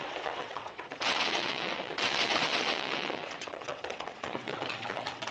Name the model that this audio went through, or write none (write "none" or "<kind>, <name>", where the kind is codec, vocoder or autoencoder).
vocoder, WaveNeXt